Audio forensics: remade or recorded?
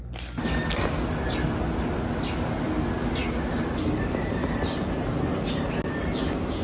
recorded